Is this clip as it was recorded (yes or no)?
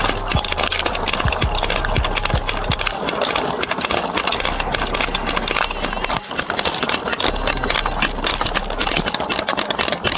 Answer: yes